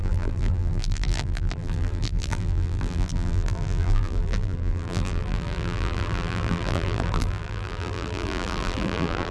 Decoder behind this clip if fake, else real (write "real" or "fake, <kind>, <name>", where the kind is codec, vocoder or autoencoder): fake, vocoder, BigVGAN v2